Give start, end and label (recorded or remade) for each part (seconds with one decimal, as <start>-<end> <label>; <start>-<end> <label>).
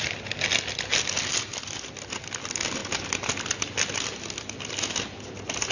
0.0-5.7 recorded